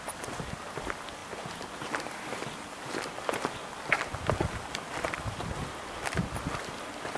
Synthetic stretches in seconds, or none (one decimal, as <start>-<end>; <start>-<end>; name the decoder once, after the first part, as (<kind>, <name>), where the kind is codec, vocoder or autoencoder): none